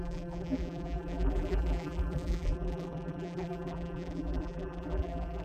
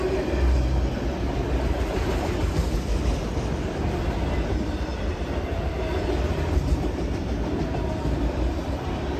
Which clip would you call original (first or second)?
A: second